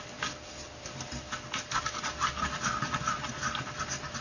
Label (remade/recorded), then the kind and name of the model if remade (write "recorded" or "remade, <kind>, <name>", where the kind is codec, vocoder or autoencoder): recorded